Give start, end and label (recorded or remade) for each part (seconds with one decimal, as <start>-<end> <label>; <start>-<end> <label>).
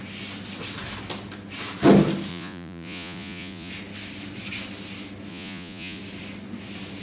0.0-2.3 recorded; 2.3-3.7 remade; 3.7-5.3 recorded; 5.3-6.0 remade; 6.0-7.0 recorded